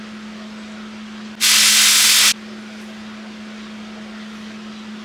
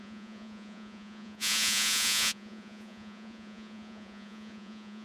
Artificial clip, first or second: second